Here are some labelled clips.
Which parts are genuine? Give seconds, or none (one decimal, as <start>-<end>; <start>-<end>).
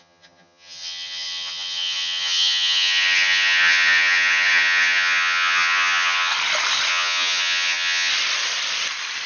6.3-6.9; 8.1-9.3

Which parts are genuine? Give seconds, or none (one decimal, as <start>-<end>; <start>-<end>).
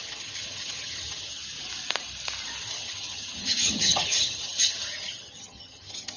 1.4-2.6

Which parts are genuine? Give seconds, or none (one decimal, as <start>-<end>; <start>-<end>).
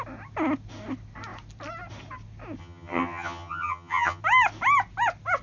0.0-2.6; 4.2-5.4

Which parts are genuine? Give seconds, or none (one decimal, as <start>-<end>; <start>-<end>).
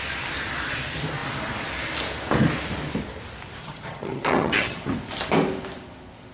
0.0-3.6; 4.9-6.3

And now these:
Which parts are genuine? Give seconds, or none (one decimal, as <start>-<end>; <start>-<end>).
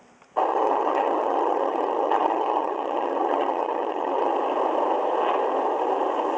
0.0-0.5; 4.3-6.4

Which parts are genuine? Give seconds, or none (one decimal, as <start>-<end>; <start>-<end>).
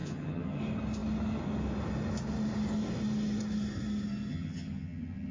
0.6-4.3